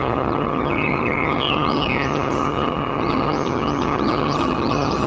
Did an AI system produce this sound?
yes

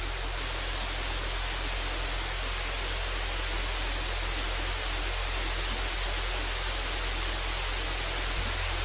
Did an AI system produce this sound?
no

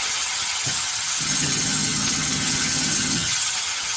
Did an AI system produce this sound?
yes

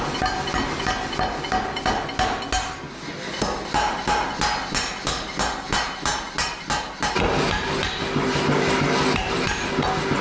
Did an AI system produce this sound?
no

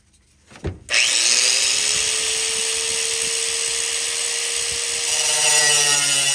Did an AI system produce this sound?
no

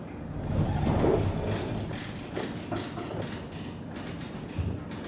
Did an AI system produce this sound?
no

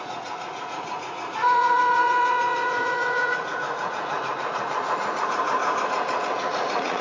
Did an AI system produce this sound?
yes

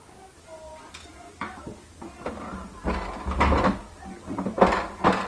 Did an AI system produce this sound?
no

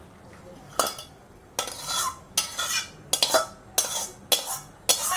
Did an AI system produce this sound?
no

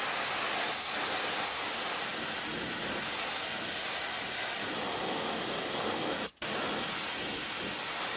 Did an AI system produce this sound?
no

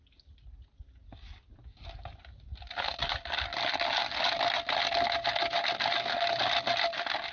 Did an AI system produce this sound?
no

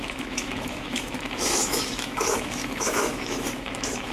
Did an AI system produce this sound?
yes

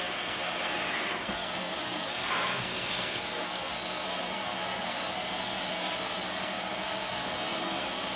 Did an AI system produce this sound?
yes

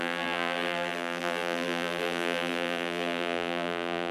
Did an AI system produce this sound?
yes